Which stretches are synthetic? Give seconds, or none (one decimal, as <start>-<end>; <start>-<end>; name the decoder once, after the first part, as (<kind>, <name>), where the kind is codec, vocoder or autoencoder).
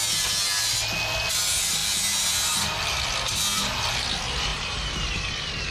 4.5-5.7 (vocoder, BigVGAN v2)